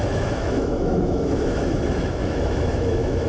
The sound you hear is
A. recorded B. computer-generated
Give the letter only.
B